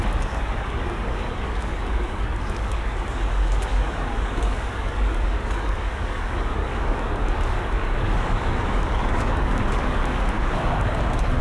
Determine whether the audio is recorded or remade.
remade